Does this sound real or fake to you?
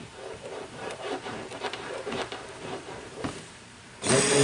fake